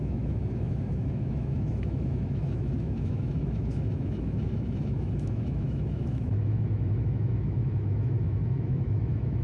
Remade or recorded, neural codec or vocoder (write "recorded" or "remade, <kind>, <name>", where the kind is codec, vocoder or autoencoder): remade, autoencoder, DAC-VAE